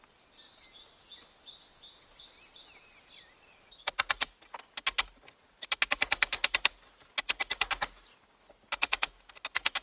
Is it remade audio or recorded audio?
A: recorded